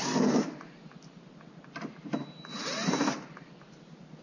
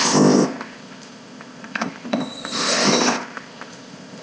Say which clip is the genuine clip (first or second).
first